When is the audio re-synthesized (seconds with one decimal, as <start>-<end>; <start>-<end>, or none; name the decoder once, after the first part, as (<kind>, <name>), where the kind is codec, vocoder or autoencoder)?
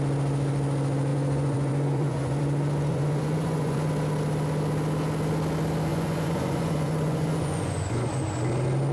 1.1-2.4 (vocoder, Vocos); 2.9-3.9; 5.9-8.1